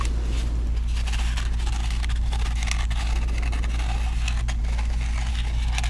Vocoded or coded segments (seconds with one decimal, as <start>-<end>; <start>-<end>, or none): none